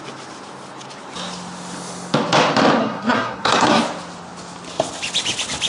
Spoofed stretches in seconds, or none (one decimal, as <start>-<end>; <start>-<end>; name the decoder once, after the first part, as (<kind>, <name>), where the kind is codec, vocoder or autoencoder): 2.8-3.8 (codec, SNAC)